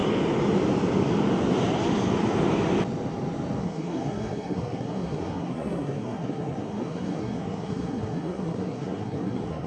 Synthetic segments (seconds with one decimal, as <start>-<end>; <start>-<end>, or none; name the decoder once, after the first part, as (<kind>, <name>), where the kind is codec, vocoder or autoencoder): 3.6-9.7 (codec, SNAC)

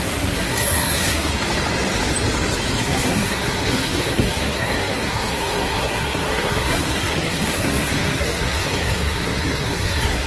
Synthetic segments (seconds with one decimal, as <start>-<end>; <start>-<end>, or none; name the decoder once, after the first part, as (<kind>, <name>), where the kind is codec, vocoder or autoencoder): 0.0-1.3 (codec, SNAC); 2.8-10.3

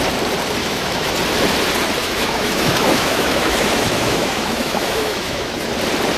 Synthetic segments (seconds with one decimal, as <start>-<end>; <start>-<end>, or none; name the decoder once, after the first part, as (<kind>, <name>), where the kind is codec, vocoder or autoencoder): 0.6-1.1 (autoencoder, DAC-VAE); 2.0-5.7

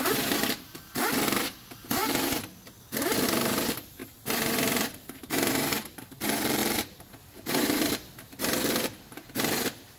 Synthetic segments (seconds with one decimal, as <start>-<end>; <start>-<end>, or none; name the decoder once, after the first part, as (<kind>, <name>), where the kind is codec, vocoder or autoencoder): 0.0-6.6 (vocoder, BigVGAN v2); 7.3-10.0

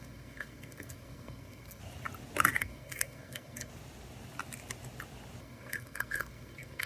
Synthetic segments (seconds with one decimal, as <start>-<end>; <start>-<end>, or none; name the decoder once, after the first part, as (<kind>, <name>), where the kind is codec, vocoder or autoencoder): 0.0-1.8 (codec, SNAC); 2.6-3.7; 5.4-6.9